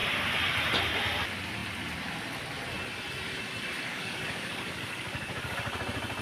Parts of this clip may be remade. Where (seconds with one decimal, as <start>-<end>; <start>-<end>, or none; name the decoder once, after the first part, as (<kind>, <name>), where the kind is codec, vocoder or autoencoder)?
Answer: 3.9-5.8 (codec, DAC)